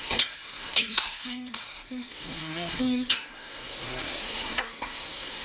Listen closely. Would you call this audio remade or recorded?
remade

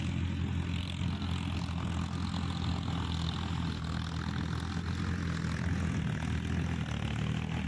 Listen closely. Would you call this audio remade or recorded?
recorded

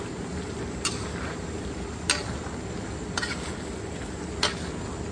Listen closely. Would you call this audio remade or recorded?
recorded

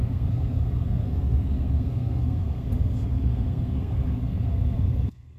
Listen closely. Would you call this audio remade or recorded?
remade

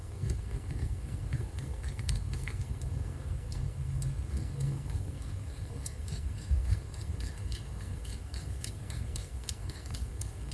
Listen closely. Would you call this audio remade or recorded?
remade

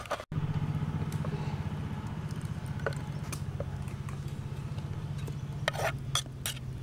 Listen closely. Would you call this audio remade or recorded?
recorded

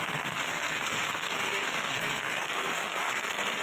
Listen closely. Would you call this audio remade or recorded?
remade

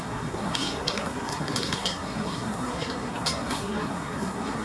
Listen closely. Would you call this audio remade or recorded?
remade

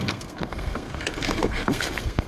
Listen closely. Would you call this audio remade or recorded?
remade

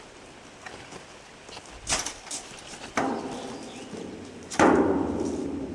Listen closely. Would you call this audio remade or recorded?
recorded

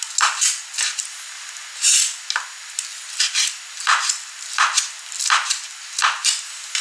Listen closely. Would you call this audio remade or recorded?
recorded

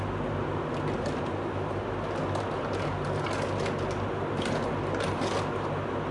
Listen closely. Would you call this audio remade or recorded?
recorded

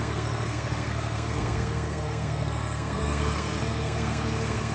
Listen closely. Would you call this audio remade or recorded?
remade